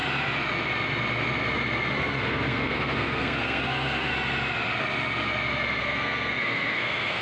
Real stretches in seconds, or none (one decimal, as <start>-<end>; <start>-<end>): 0.0-2.0; 4.1-5.8